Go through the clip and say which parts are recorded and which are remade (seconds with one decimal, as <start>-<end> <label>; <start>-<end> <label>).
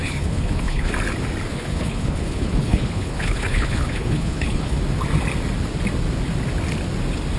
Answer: 0.0-0.9 remade; 0.9-1.5 recorded; 1.5-4.8 remade; 4.8-7.4 recorded